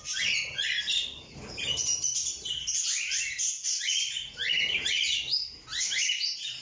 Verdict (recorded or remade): recorded